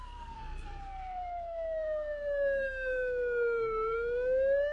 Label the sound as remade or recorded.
remade